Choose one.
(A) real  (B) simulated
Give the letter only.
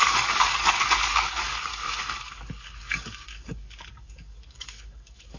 B